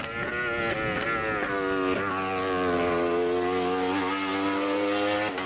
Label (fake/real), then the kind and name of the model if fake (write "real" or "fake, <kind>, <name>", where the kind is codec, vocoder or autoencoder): real